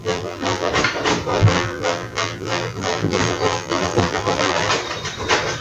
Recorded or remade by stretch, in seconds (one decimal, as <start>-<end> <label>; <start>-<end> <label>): 0.0-0.7 remade; 0.7-1.3 recorded; 1.3-4.7 remade; 4.7-5.6 recorded